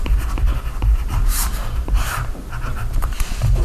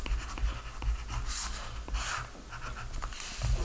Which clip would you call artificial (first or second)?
first